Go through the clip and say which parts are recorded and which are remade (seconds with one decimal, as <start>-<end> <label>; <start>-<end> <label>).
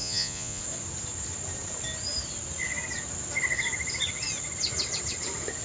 0.0-0.6 remade; 0.6-5.6 recorded